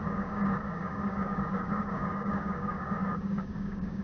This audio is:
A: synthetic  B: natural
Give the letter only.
A